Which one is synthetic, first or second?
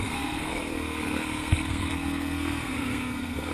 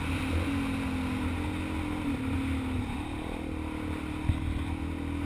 first